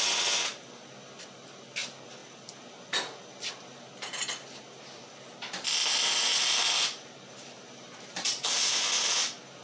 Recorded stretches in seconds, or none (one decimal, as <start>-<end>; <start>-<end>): 0.0-6.3; 8.6-9.6